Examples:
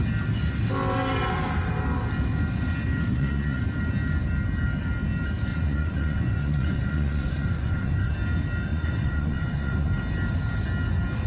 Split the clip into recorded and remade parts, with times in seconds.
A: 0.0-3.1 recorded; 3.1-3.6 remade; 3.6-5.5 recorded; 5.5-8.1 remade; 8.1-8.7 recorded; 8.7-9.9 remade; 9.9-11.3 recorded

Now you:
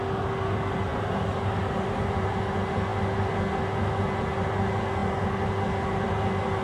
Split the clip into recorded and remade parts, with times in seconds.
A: 0.0-0.9 recorded; 0.9-2.4 remade; 2.4-6.6 recorded

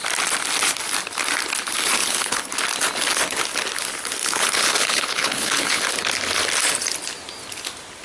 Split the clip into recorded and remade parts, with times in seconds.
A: 0.0-2.0 recorded; 2.0-2.5 remade; 2.5-4.2 recorded; 4.2-5.8 remade; 5.8-8.0 recorded